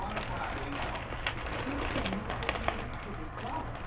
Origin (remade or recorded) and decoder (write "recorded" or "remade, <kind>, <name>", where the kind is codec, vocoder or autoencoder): recorded